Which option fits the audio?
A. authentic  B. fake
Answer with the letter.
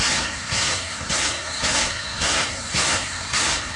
B